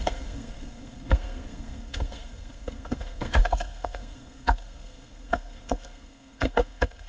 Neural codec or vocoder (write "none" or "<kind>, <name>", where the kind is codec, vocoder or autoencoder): codec, SNAC